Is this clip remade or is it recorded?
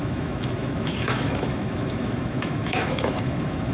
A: remade